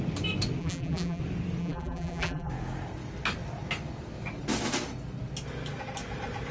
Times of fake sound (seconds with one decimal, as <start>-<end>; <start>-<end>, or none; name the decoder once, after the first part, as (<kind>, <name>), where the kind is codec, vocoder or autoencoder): 0.6-1.2 (vocoder, BigVGAN v2); 1.6-2.5